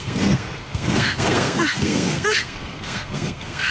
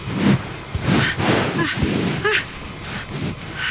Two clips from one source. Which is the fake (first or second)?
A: first